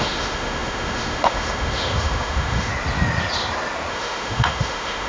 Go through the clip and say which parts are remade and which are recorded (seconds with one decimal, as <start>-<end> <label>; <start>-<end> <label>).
0.0-2.7 remade; 2.7-3.9 recorded; 3.9-5.1 remade